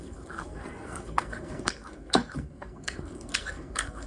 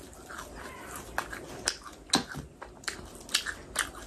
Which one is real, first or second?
second